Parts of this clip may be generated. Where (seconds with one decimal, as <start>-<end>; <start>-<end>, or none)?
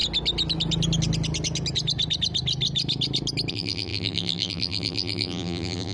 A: 3.5-5.9